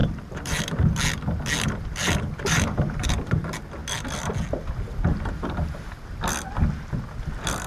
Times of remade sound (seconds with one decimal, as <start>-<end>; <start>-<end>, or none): 0.0-0.6; 2.0-3.4